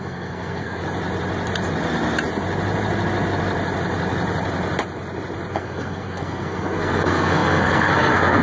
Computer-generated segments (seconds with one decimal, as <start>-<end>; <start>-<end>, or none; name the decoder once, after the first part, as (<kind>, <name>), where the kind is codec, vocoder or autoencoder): 0.0-0.8 (codec, SNAC); 5.5-8.4